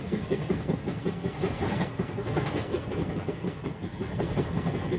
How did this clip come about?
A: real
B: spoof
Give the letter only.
B